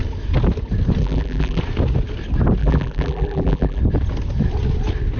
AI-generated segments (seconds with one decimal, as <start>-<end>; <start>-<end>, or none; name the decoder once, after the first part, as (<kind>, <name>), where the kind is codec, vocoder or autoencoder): 1.0-1.6 (vocoder, BigVGAN v2); 2.6-3.8

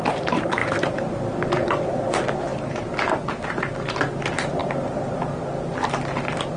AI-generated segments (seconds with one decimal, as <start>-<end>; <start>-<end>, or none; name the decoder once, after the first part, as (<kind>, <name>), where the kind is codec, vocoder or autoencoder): 0.6-1.7 (vocoder, BigVGAN v2); 4.6-6.6